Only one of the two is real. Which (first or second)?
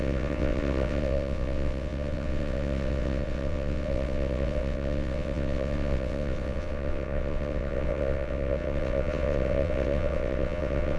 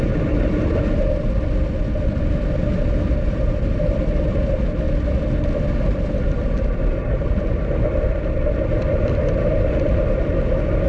second